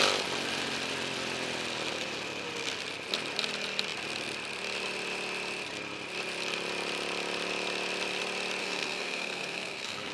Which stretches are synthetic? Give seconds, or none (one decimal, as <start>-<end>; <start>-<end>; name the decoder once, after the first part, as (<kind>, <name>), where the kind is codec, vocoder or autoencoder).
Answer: 8.6-10.1 (codec, SNAC)